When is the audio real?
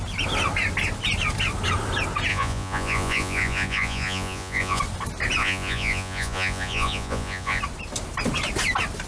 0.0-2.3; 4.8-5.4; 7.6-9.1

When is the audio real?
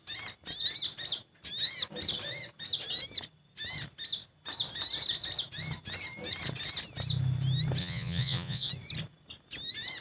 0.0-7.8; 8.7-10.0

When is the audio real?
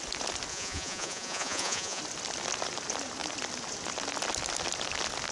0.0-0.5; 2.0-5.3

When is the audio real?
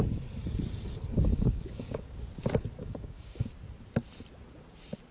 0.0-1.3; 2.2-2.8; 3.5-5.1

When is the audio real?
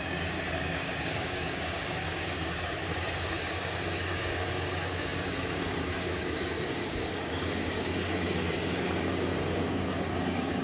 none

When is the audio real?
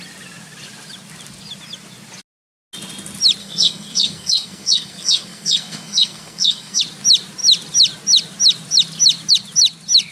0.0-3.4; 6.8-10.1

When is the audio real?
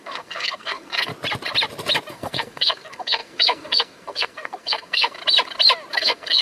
1.1-2.1; 5.2-5.9